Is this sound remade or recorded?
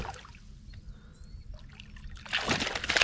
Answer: recorded